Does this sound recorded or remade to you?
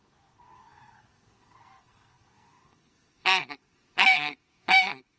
remade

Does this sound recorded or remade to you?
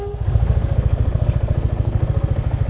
remade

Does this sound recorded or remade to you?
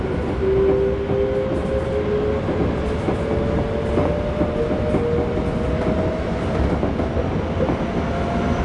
recorded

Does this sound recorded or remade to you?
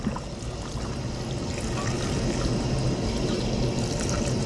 recorded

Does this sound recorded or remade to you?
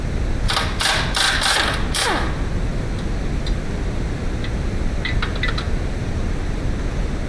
recorded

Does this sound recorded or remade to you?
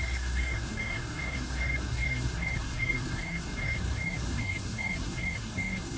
remade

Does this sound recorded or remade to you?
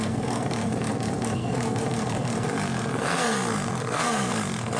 remade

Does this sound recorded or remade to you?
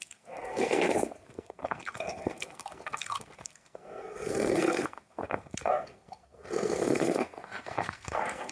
remade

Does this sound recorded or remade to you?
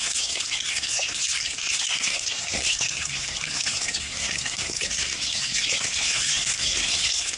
remade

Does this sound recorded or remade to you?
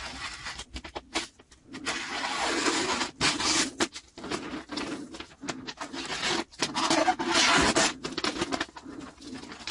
recorded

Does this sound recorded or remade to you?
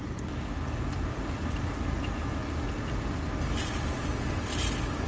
recorded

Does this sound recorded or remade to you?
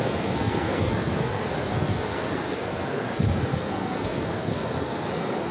remade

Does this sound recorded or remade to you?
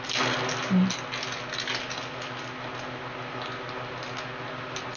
recorded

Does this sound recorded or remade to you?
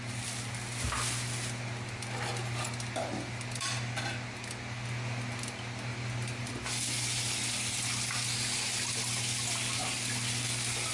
recorded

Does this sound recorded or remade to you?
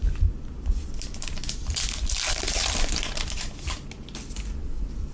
recorded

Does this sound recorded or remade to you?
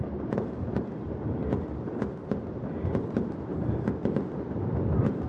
recorded